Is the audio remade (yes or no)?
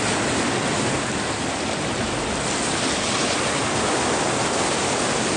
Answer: no